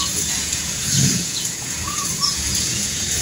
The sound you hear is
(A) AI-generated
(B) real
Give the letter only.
A